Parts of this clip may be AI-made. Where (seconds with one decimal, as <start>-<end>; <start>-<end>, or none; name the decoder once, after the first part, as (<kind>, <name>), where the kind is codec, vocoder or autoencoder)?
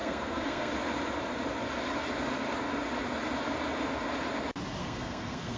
0.0-0.7 (codec, SNAC); 4.8-5.6